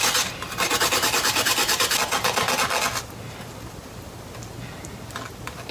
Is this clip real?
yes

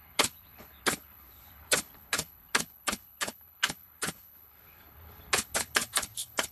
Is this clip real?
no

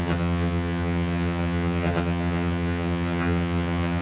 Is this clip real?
no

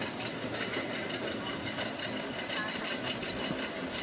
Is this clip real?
yes